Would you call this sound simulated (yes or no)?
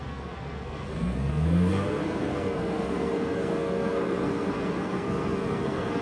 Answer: yes